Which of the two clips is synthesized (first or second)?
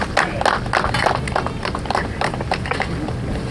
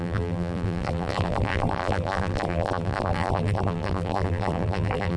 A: second